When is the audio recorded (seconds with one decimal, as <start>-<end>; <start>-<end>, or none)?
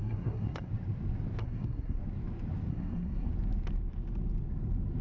0.7-1.4; 2.0-2.7; 3.3-5.0